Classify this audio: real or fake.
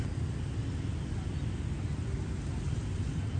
real